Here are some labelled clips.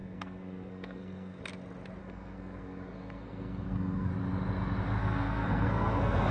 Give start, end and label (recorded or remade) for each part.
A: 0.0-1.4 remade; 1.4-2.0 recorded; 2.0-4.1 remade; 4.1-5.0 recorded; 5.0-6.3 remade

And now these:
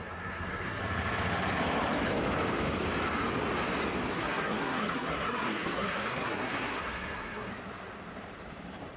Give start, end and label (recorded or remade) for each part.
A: 0.0-0.8 remade; 0.8-4.1 recorded; 4.1-7.5 remade; 7.5-9.0 recorded